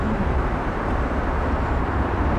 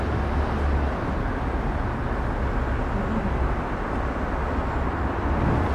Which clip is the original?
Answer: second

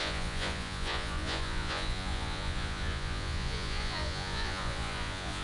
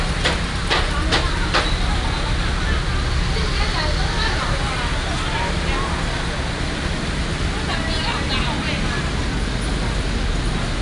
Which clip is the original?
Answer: second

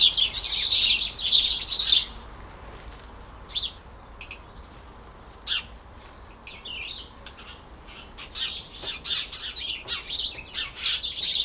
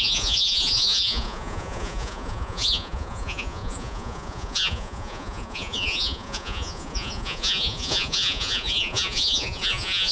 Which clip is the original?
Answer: first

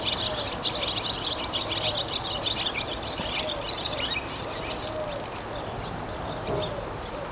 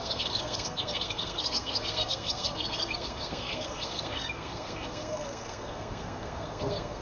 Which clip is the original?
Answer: first